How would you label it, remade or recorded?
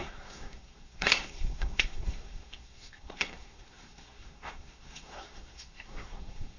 remade